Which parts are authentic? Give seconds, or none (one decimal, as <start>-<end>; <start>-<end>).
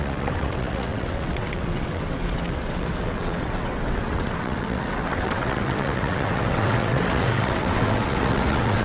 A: none